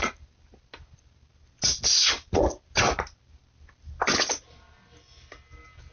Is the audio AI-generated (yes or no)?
no